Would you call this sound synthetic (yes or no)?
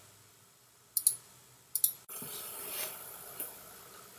no